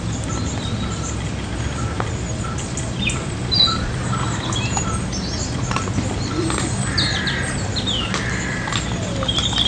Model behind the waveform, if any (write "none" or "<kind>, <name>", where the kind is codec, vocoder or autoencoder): none